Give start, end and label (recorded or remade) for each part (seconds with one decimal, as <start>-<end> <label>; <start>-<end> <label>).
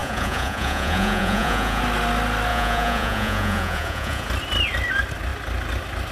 0.0-1.8 remade; 1.8-2.5 recorded; 2.5-4.3 remade; 4.3-6.1 recorded